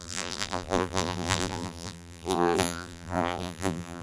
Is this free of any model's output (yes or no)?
no